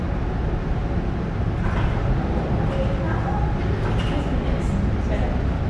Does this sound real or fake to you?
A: real